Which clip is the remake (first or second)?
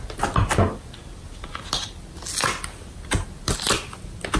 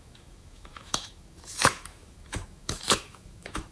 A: second